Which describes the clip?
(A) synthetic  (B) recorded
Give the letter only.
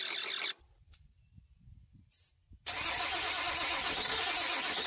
B